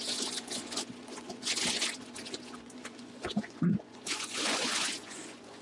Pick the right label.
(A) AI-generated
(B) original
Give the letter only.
A